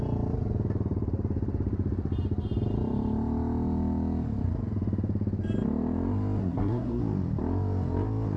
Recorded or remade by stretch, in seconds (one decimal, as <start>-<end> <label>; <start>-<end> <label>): 0.0-6.4 recorded; 6.4-7.0 remade; 7.0-8.4 recorded